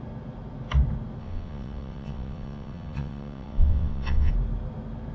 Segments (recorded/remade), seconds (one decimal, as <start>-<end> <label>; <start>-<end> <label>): 0.0-1.2 recorded; 1.2-4.3 remade; 4.3-5.1 recorded